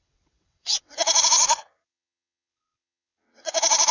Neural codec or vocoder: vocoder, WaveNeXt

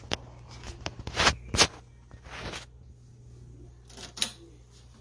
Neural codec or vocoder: none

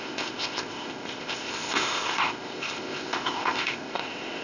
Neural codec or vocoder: codec, ZipCodec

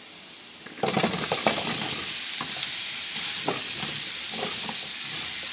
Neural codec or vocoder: none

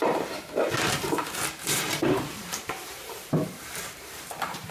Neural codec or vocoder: vocoder, BigVGAN v2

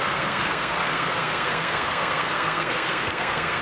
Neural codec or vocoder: codec, SNAC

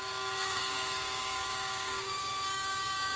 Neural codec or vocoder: codec, DAC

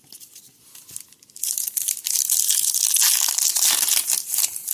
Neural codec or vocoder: none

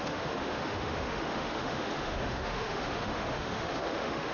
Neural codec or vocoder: autoencoder, DAC-VAE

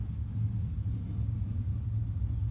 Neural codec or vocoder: none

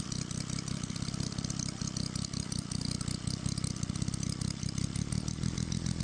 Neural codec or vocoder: none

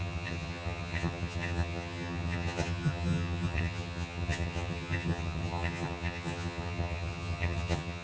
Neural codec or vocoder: vocoder, HiFi-GAN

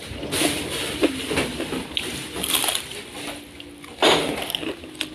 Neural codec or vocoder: none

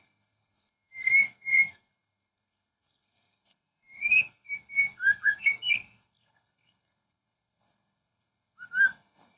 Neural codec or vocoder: codec, SNAC